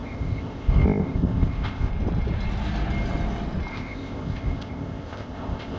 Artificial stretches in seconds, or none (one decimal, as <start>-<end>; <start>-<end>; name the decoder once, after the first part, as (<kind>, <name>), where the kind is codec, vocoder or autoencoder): 0.0-1.9 (codec, ZipCodec); 3.7-5.8